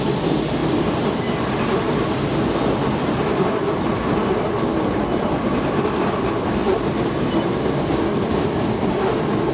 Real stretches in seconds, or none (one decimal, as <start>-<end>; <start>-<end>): 0.0-9.5